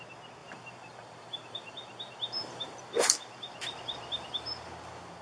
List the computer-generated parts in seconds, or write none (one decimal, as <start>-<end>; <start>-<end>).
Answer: 0.4-2.8

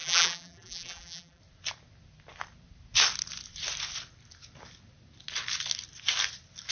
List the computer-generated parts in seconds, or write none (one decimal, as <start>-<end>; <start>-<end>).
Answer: 0.0-1.4

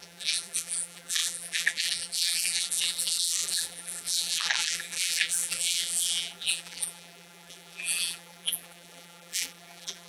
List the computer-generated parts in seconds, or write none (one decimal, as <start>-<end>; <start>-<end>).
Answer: 0.0-10.1

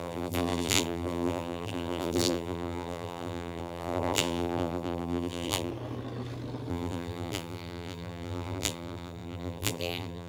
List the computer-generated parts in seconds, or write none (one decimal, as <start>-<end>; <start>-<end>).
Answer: 0.0-5.7; 6.7-10.3

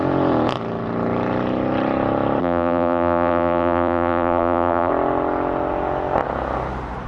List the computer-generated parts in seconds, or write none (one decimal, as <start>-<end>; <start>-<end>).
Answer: 2.4-4.9

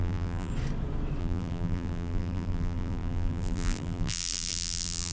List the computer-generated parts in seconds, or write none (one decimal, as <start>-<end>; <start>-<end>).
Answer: 0.0-0.5; 1.2-5.1